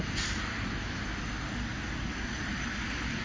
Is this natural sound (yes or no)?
yes